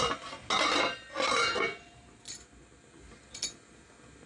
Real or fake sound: real